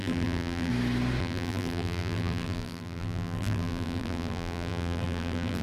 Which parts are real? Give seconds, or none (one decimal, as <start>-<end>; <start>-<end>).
0.7-1.2